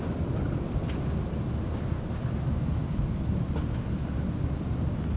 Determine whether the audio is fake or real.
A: real